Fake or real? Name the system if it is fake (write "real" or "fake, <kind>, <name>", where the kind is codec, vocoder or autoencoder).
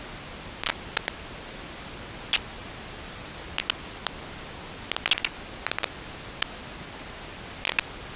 real